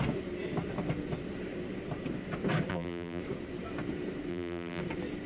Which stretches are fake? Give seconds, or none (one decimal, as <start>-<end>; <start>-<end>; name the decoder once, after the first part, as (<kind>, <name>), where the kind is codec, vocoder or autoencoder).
2.7-3.2 (vocoder, BigVGAN v2); 4.3-4.8